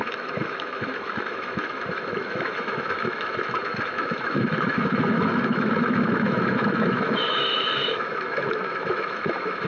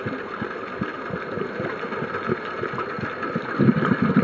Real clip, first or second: second